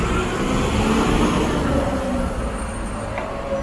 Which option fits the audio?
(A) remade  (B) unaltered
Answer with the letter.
B